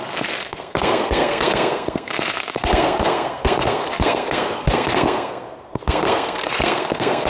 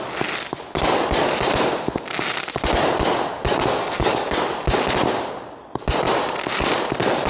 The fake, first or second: first